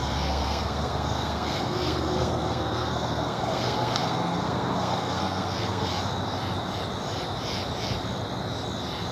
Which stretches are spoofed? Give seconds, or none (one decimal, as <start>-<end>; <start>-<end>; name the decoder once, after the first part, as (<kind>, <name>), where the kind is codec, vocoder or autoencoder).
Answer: 0.0-5.9 (codec, SNAC)